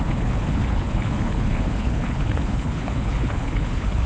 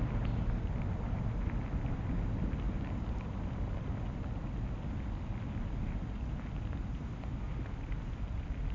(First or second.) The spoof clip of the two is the first